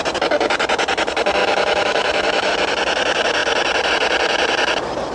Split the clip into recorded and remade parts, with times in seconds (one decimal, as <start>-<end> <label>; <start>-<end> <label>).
0.0-1.4 recorded; 1.4-2.5 remade; 2.5-5.1 recorded